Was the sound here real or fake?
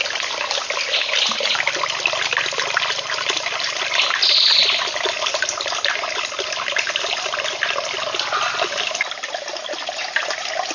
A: real